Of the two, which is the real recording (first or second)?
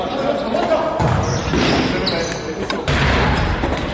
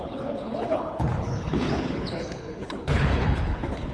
first